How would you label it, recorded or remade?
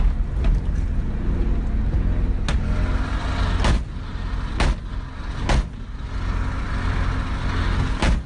recorded